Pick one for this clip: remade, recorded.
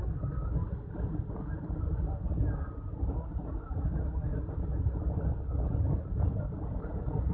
recorded